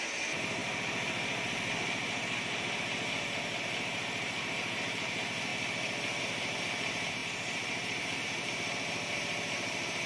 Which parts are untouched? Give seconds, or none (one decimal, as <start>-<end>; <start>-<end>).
0.6-2.8; 5.5-6.2